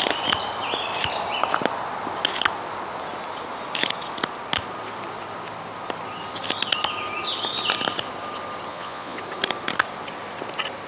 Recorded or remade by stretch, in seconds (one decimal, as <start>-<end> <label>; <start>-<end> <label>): 0.0-8.7 recorded; 8.7-9.2 remade; 9.2-10.9 recorded